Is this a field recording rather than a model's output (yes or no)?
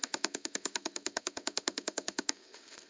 no